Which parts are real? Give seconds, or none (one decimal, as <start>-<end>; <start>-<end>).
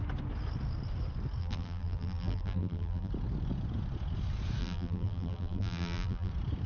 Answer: 0.0-1.4; 3.1-4.6; 6.3-6.7